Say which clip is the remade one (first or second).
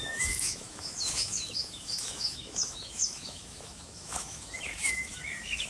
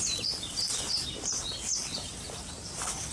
first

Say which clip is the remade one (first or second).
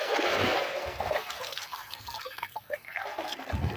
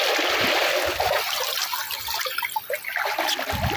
first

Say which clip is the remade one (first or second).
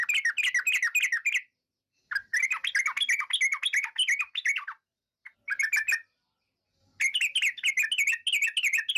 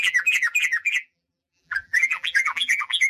second